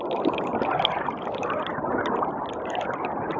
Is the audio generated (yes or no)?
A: no